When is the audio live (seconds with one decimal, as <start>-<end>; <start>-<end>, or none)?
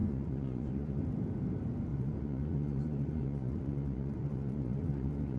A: 1.0-1.9